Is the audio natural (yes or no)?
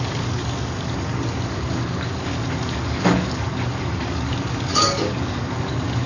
no